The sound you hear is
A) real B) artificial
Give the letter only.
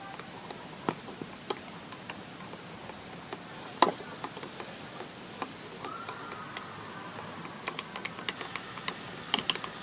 A